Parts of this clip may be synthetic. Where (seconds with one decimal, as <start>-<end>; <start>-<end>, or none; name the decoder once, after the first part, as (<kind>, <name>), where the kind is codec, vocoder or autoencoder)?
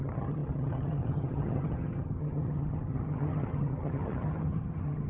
0.0-5.1 (vocoder, HiFi-GAN)